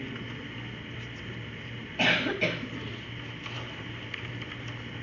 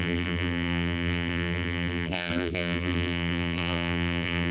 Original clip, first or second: first